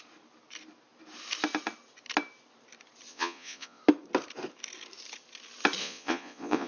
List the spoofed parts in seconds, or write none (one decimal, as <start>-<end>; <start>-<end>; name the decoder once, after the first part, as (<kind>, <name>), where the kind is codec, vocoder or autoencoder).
3.1-3.8 (vocoder, Vocos); 5.8-6.7